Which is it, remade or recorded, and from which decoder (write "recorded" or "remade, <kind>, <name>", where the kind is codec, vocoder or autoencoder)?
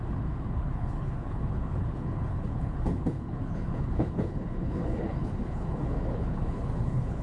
remade, codec, HILCodec